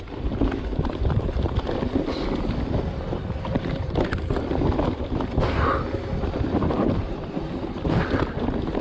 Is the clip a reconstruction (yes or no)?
no